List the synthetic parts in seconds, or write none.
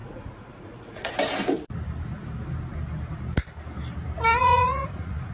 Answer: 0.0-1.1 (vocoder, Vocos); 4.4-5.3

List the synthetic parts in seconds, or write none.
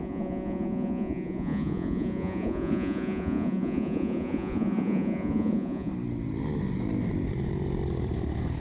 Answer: 0.0-5.9 (vocoder, Vocos)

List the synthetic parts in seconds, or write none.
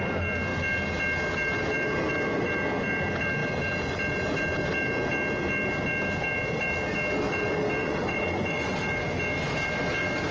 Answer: 7.8-8.7 (vocoder, Vocos)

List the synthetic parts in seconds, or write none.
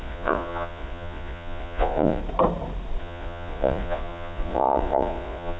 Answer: 0.0-2.2 (vocoder, Vocos); 3.0-5.6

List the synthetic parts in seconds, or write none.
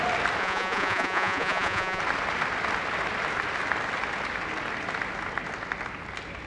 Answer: 0.4-2.0 (vocoder, Vocos)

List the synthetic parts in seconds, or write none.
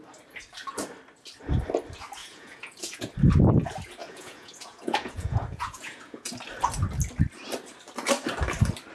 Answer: 2.2-3.1 (vocoder, Vocos); 4.0-6.3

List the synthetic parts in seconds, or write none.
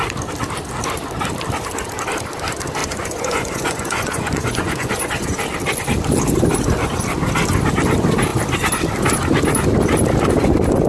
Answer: 2.8-5.4 (vocoder, Vocos)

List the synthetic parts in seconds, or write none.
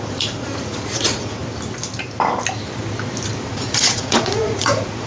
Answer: 0.0-1.4 (vocoder, Vocos); 3.5-5.1